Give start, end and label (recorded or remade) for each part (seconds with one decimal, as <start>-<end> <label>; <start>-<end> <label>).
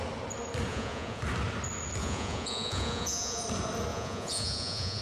0.0-0.7 recorded; 0.7-1.2 remade; 1.2-2.0 recorded; 2.0-3.4 remade; 3.4-3.9 recorded; 3.9-5.0 remade